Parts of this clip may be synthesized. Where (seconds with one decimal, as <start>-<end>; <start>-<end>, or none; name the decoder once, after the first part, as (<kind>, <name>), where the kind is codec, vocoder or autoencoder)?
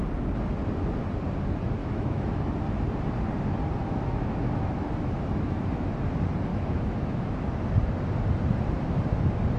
1.8-2.4 (autoencoder, DAC-VAE); 3.8-5.9; 6.5-7.2